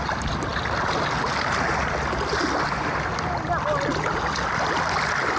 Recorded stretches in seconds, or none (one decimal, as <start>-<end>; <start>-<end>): 0.0-5.4

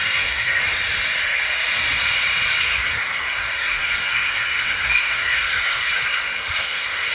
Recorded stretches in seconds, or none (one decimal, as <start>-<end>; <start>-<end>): 0.6-2.6

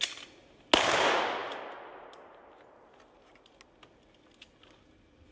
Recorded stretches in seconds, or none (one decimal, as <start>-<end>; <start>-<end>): 0.0-5.3

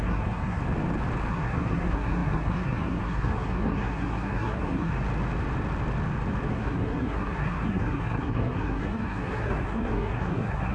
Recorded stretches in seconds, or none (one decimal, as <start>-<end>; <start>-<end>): 0.6-1.3; 4.9-6.5

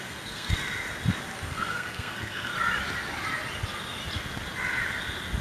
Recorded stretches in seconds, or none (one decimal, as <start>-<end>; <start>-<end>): 0.6-1.5; 2.5-5.4

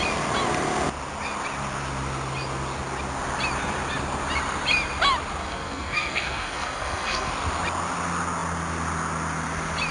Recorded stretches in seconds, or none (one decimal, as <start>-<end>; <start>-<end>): 0.0-5.4; 7.3-9.9

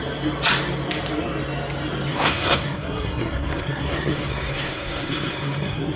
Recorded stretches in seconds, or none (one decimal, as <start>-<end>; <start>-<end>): 0.0-2.1

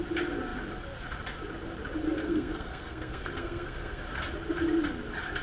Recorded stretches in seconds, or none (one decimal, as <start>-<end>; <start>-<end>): 0.0-2.2; 4.0-5.4